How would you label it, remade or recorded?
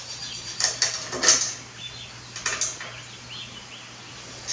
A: recorded